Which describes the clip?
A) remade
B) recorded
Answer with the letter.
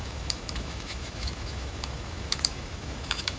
A